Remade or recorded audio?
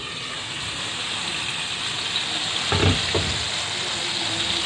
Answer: recorded